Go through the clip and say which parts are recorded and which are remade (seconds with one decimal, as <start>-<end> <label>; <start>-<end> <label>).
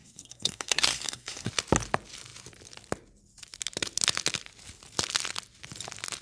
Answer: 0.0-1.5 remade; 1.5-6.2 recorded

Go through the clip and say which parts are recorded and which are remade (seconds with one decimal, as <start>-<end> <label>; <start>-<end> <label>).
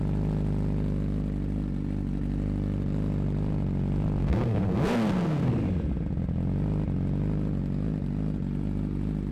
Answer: 0.0-4.2 recorded; 4.2-5.5 remade; 5.5-9.3 recorded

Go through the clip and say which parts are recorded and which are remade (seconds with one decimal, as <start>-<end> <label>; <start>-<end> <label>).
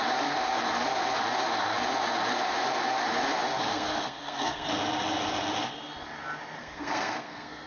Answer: 0.0-3.7 recorded; 3.7-4.7 remade; 4.7-6.6 recorded; 6.6-7.7 remade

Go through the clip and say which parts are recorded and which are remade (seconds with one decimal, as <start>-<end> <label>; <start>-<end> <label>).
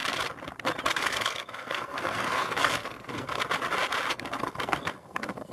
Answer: 0.0-0.9 recorded; 0.9-3.4 remade; 3.4-4.1 recorded; 4.1-5.5 remade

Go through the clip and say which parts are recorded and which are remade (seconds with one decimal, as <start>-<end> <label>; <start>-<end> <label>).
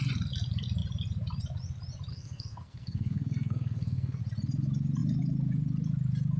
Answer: 0.0-2.1 recorded; 2.1-4.2 remade; 4.2-6.4 recorded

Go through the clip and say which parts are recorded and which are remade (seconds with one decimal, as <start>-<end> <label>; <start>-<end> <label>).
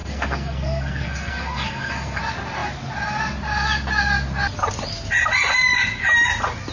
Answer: 0.0-2.2 remade; 2.2-6.7 recorded